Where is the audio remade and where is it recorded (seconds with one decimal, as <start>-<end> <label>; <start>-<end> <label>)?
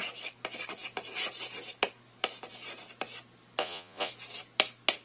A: 0.0-3.6 recorded; 3.6-4.1 remade; 4.1-5.0 recorded